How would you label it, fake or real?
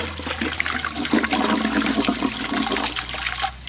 real